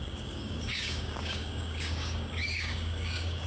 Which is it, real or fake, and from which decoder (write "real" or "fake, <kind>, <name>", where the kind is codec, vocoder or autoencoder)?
fake, codec, DAC